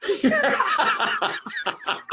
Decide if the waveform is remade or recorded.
recorded